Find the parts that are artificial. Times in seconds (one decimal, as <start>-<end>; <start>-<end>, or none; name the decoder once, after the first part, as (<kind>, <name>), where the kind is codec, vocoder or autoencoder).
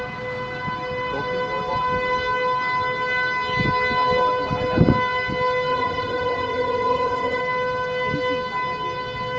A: 5.7-7.4 (vocoder, HiFi-GAN)